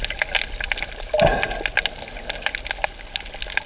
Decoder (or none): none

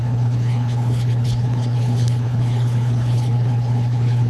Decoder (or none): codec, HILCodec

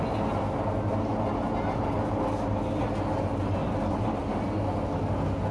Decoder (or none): none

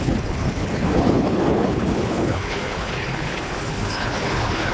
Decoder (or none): codec, HILCodec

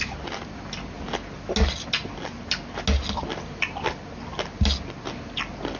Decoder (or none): none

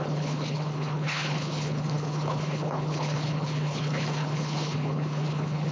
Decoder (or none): codec, HILCodec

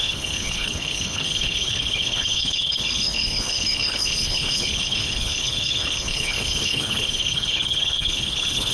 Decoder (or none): codec, HILCodec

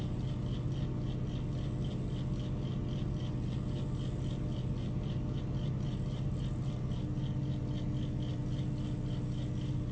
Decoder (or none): none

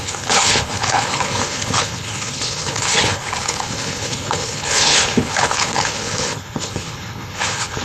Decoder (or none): codec, HILCodec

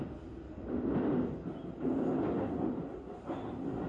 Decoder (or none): none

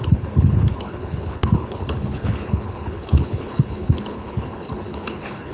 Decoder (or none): codec, HILCodec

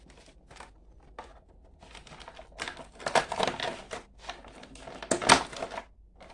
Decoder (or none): none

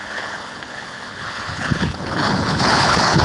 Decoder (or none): codec, HILCodec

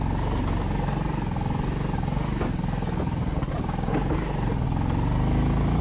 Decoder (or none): none